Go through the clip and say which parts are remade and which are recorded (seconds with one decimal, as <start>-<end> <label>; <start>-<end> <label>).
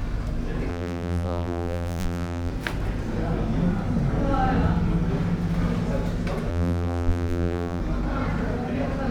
0.0-0.7 recorded; 0.7-2.5 remade; 2.5-6.5 recorded; 6.5-7.8 remade; 7.8-9.1 recorded